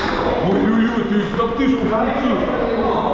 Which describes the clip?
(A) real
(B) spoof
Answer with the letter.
A